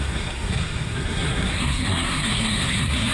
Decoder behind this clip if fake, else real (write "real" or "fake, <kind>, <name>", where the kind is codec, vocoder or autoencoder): fake, codec, SNAC